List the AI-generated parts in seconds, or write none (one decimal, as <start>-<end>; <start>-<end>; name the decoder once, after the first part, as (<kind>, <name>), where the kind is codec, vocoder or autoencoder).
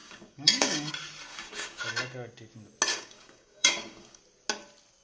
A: 0.0-0.9 (codec, DAC); 1.3-1.8; 2.9-4.2